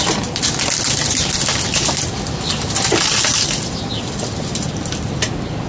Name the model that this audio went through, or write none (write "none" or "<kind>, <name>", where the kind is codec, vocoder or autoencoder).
none